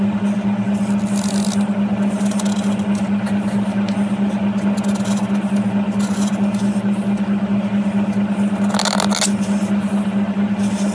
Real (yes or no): yes